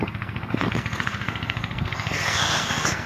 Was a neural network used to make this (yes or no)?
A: yes